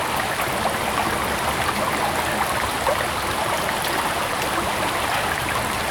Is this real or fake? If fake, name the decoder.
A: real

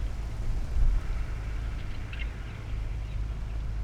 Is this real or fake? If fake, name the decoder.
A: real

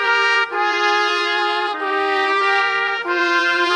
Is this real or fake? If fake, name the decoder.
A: fake, vocoder, BigVGAN v2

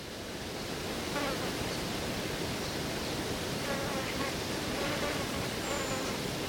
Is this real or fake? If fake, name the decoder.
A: real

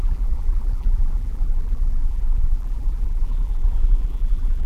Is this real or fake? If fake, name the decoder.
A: fake, vocoder, BigVGAN v2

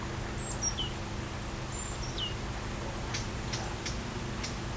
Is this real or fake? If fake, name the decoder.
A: real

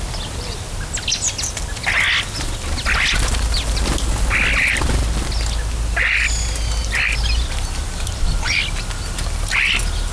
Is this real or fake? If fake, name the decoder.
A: real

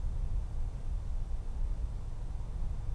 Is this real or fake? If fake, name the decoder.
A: real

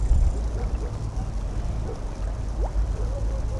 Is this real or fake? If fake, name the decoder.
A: real